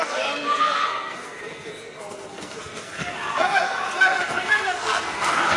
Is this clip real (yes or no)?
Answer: no